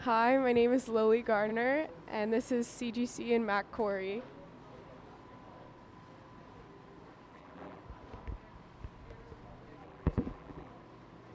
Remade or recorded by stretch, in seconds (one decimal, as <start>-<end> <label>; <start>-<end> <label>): 0.0-7.3 recorded; 7.3-7.8 remade; 7.8-9.8 recorded; 9.8-10.7 remade; 10.7-11.3 recorded